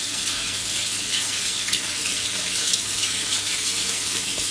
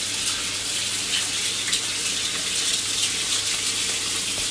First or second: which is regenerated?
first